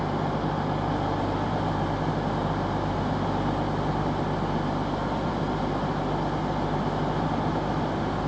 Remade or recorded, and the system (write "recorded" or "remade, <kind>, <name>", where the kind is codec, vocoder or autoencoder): recorded